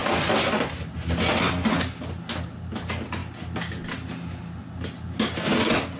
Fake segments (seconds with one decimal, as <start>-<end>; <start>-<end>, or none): none